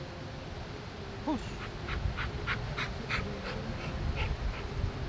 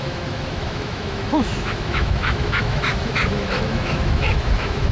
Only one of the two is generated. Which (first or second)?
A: second